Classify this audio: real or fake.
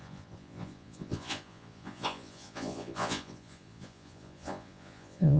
fake